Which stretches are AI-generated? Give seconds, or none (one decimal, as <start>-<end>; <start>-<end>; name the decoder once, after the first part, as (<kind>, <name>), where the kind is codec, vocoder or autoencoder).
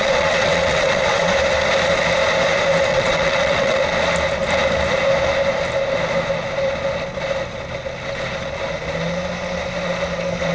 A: 0.0-1.3 (vocoder, WaveNeXt); 2.9-3.8